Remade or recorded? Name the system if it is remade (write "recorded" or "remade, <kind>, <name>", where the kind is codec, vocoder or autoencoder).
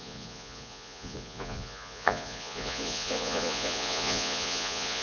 remade, vocoder, Vocos